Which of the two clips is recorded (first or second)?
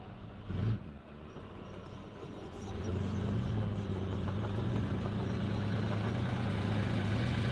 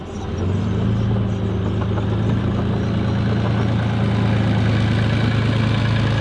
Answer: second